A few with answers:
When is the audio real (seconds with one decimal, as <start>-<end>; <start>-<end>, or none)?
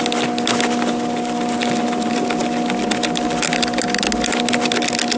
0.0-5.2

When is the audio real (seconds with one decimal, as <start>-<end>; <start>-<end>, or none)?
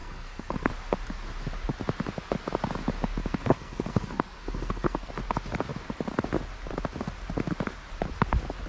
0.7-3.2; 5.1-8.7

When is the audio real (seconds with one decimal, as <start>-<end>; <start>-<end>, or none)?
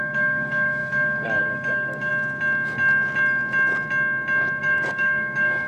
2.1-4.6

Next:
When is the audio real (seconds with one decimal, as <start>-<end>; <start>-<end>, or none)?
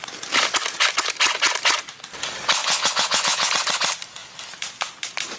0.0-2.6; 3.5-5.4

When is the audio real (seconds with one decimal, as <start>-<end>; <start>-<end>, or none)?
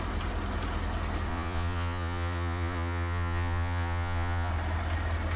0.0-1.3; 4.5-5.4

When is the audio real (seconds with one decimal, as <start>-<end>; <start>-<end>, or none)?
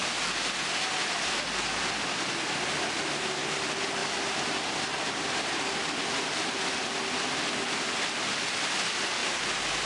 0.0-9.9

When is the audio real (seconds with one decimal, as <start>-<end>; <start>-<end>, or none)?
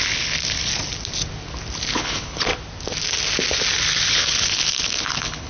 0.7-1.9; 2.5-4.1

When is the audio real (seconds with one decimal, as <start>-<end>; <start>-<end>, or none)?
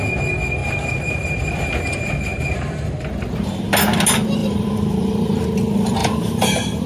0.0-0.6; 3.6-4.4; 5.4-6.0